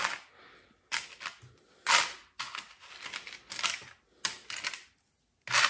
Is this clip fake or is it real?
real